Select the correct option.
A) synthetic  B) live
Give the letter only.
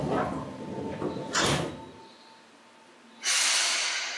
B